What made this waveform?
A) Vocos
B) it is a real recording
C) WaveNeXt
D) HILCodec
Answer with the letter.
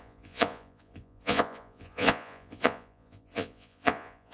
A